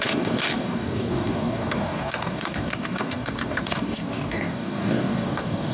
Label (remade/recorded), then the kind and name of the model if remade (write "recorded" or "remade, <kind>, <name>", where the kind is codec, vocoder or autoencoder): remade, codec, DAC